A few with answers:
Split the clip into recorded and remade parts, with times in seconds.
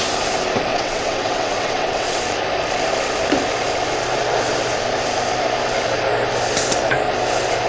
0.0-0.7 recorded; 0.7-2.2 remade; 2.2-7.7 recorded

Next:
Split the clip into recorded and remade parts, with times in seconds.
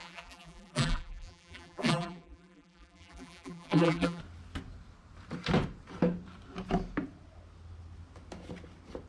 0.0-4.2 remade; 4.2-9.1 recorded